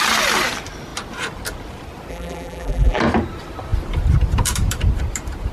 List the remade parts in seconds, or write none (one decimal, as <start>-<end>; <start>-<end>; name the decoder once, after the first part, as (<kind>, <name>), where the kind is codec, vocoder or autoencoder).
2.1-3.0 (vocoder, BigVGAN v2)